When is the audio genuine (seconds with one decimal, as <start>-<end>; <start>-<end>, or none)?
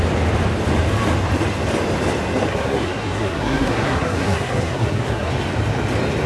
0.0-2.5; 5.3-6.3